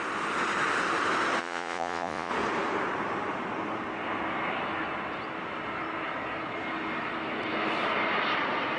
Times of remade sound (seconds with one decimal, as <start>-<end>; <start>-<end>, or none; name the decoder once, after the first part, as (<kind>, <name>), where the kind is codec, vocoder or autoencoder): 1.4-2.3 (vocoder, Vocos)